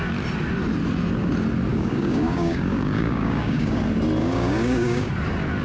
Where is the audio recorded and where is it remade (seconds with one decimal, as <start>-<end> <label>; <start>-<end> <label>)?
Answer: 0.0-1.7 recorded; 1.7-3.8 remade; 3.8-4.2 recorded; 4.2-5.1 remade; 5.1-5.6 recorded